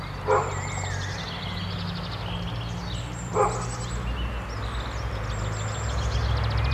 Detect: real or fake real